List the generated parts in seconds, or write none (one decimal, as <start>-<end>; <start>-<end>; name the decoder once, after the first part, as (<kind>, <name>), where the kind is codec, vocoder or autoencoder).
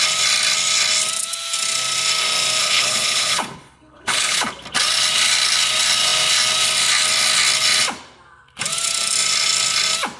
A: 2.6-4.5 (codec, HILCodec)